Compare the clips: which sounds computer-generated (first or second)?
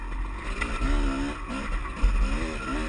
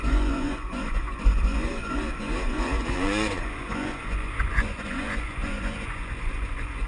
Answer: second